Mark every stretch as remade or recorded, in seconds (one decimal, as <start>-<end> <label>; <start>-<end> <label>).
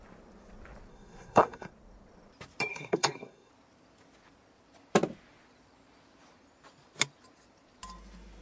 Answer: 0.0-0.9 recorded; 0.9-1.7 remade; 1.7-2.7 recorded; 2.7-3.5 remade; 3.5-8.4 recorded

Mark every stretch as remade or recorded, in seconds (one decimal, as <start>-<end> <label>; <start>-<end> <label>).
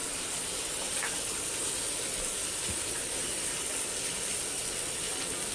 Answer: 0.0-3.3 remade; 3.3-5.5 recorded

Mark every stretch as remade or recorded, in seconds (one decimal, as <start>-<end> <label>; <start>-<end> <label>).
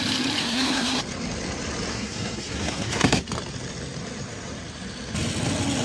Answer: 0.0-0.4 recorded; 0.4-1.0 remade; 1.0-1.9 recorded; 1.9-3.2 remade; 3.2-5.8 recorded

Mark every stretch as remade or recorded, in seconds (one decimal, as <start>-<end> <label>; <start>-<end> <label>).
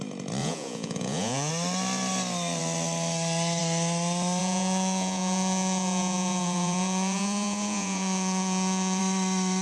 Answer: 0.0-0.4 recorded; 0.4-1.5 remade; 1.5-4.4 recorded; 4.4-9.0 remade; 9.0-9.6 recorded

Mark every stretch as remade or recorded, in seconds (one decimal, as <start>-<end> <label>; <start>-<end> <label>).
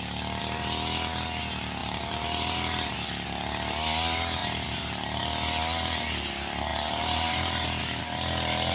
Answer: 0.0-1.8 recorded; 1.8-2.9 remade; 2.9-4.4 recorded; 4.4-5.2 remade; 5.2-6.7 recorded; 6.7-8.0 remade; 8.0-8.7 recorded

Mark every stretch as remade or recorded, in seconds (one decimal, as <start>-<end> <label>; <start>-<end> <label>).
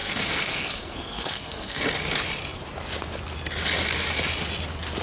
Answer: 0.0-1.8 remade; 1.8-5.0 recorded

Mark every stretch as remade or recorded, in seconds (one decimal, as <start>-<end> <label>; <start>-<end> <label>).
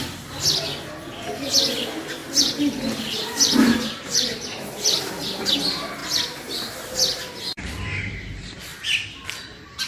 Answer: 0.0-2.2 recorded; 2.2-5.1 remade; 5.1-9.9 recorded